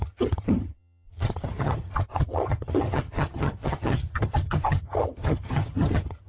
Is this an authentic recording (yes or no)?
no